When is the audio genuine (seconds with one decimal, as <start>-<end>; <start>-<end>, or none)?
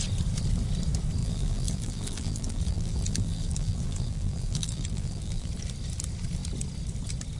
0.0-1.2; 5.5-7.4